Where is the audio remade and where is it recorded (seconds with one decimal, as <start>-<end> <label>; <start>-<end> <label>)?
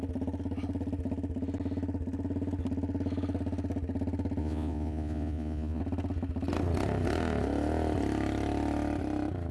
0.0-4.4 recorded; 4.4-5.8 remade; 5.8-9.5 recorded